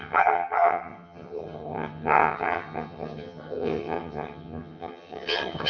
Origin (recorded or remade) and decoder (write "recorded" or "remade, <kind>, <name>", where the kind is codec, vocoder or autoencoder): remade, vocoder, HiFi-GAN